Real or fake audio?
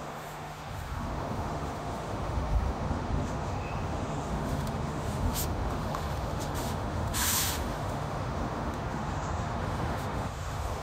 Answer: fake